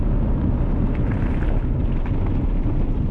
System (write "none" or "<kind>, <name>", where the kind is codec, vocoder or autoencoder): none